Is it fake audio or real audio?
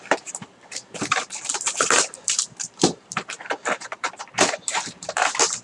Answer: fake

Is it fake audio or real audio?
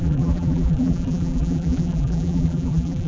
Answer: fake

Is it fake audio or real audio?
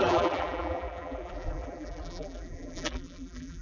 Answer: fake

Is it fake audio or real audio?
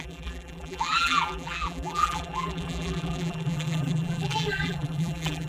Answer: fake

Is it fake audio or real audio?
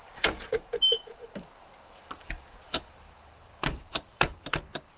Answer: fake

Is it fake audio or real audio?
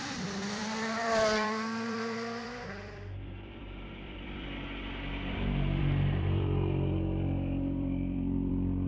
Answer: fake